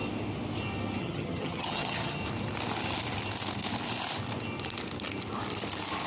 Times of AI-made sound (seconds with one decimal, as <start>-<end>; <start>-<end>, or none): 1.0-2.2